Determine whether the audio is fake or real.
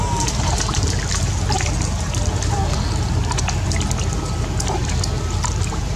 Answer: real